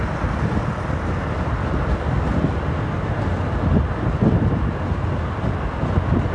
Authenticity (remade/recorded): recorded